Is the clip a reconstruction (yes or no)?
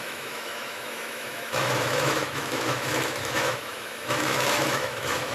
yes